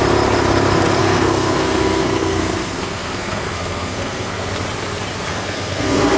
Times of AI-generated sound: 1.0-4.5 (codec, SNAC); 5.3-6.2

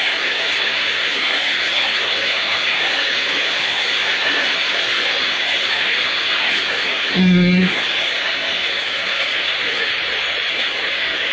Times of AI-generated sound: 0.0-9.9 (codec, SNAC); 10.5-11.3

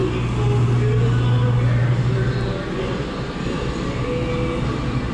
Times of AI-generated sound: none

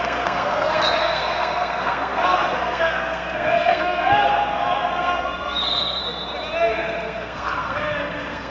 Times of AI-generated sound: 0.0-6.0 (codec, SNAC); 6.7-8.5

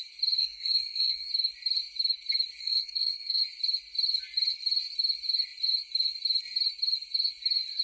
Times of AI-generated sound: 0.4-1.3 (codec, SNAC); 2.6-3.4

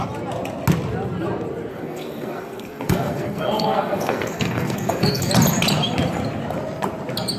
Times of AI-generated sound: 1.7-5.3 (codec, SNAC)